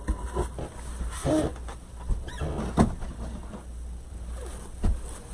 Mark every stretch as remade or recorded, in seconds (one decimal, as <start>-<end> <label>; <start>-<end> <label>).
0.0-5.3 recorded